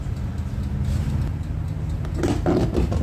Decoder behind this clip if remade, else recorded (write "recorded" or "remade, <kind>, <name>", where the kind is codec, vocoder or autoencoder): recorded